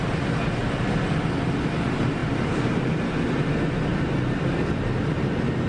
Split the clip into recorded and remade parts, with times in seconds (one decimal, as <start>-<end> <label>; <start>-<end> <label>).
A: 0.0-2.2 recorded; 2.2-2.8 remade; 2.8-5.7 recorded